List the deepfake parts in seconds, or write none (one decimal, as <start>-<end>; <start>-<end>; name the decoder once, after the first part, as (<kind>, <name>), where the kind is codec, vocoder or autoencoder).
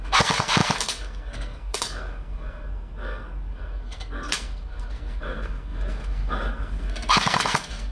0.0-7.9 (codec, SNAC)